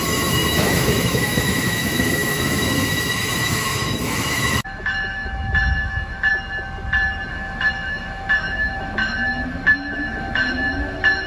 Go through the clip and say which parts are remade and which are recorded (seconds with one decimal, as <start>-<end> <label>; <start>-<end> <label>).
0.0-6.3 remade; 6.3-7.3 recorded; 7.3-11.3 remade